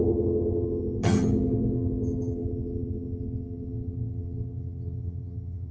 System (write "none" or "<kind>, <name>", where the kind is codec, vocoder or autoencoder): vocoder, HiFi-GAN